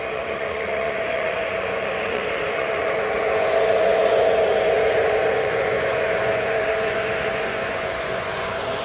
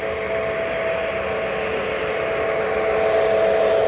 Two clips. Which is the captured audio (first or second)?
second